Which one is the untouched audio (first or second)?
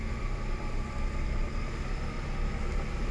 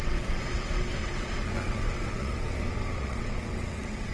first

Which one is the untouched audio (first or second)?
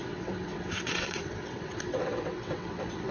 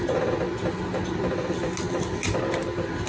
second